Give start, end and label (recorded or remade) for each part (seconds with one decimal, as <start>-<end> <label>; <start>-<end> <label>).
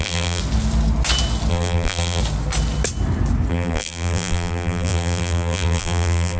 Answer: 0.0-0.4 remade; 0.4-1.5 recorded; 1.5-2.2 remade; 2.2-3.5 recorded; 3.5-6.4 remade